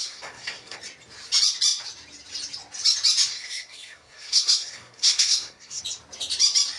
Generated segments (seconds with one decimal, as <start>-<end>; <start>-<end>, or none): 0.0-0.8; 3.3-5.8